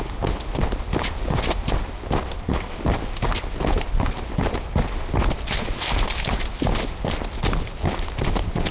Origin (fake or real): real